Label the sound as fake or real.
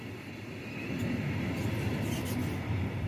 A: real